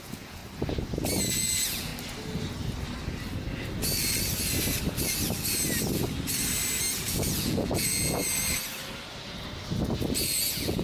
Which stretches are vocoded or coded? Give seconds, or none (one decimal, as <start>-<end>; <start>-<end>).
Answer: 0.0-0.4; 1.3-1.9; 6.9-8.2; 10.1-10.8